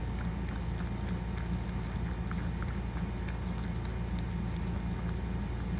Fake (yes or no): no